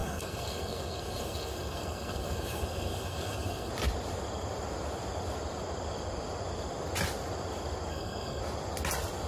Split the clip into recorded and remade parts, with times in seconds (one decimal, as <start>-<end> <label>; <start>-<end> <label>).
0.0-3.7 remade; 3.7-7.9 recorded; 7.9-8.4 remade; 8.4-9.3 recorded